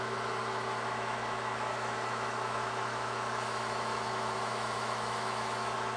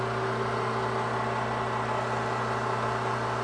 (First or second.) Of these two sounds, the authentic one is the second